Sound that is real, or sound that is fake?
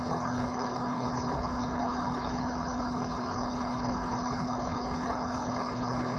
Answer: fake